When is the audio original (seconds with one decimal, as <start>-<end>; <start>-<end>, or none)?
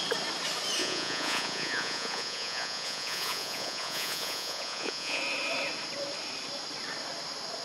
0.0-0.8; 5.2-7.6